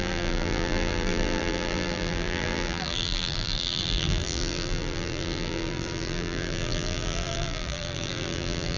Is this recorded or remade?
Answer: remade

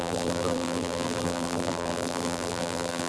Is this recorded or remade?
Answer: remade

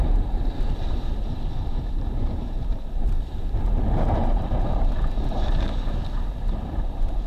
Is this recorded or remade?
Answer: remade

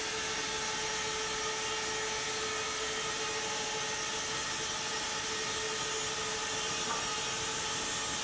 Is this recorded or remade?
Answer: recorded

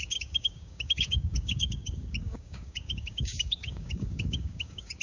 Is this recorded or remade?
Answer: remade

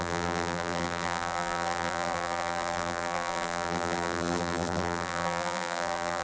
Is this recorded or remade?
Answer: remade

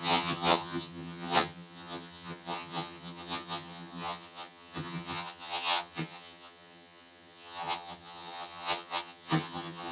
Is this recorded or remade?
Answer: remade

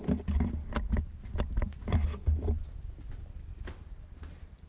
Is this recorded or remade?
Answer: recorded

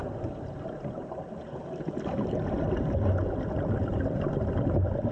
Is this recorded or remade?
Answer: remade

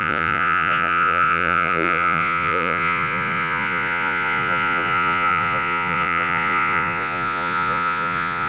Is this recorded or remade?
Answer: remade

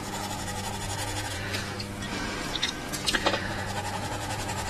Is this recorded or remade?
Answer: remade